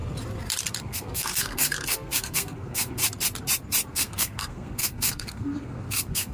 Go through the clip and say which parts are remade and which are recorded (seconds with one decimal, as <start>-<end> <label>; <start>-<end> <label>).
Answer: 0.0-0.8 recorded; 0.8-3.0 remade; 3.0-3.9 recorded; 3.9-6.3 remade